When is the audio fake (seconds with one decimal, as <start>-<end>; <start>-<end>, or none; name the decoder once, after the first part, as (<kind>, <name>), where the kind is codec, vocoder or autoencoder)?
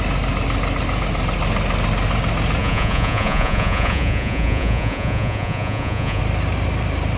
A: 2.6-6.2 (vocoder, Vocos)